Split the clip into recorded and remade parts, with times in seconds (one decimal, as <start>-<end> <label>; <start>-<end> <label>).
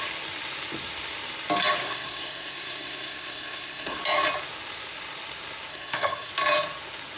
0.0-1.8 recorded; 1.8-4.0 remade; 4.0-5.7 recorded; 5.7-6.3 remade; 6.3-7.2 recorded